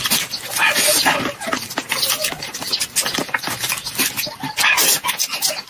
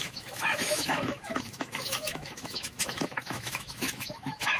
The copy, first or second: second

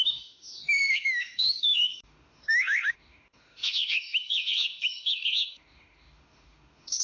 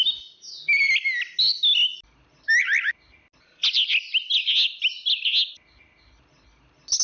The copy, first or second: first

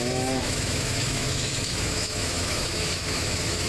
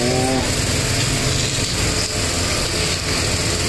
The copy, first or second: first